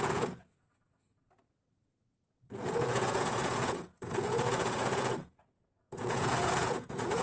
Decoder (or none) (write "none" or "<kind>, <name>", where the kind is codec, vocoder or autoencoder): vocoder, Vocos